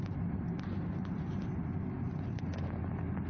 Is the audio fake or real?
real